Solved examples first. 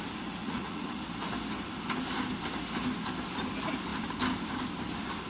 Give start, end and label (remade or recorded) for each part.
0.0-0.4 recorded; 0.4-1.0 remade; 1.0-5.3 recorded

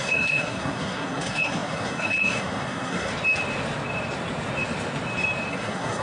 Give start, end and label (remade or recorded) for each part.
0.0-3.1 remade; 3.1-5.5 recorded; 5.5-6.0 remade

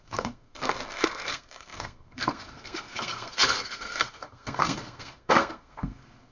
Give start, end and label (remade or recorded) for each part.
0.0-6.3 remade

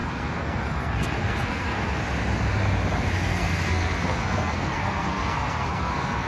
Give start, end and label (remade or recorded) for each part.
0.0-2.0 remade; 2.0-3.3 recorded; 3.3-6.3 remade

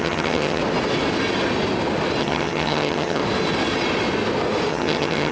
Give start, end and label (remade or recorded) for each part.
0.0-0.6 remade; 0.6-2.2 recorded; 2.2-3.2 remade; 3.2-4.7 recorded; 4.7-5.3 remade

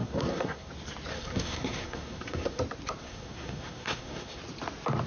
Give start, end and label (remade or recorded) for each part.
0.0-0.7 remade; 0.7-1.1 recorded; 1.1-2.6 remade; 2.6-3.0 recorded; 3.0-4.4 remade; 4.4-5.1 recorded